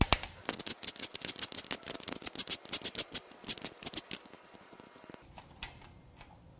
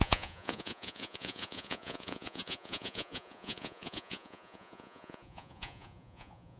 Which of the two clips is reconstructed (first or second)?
second